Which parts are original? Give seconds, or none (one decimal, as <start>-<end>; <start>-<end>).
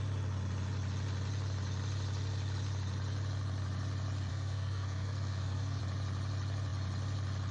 0.0-4.3; 5.8-7.5